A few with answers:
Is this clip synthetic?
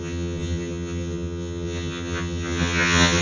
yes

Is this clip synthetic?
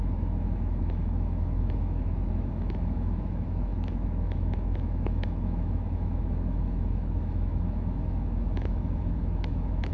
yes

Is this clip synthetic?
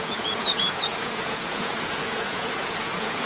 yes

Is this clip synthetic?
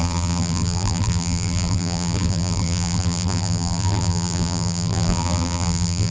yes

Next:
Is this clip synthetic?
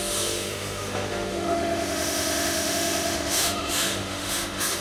yes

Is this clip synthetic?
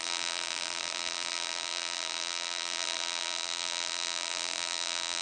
yes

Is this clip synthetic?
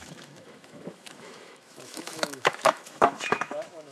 yes